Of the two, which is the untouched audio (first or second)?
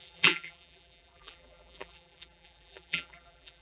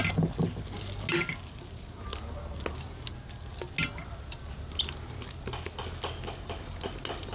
second